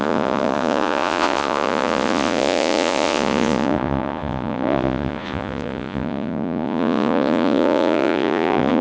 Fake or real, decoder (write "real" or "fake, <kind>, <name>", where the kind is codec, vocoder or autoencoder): fake, vocoder, Vocos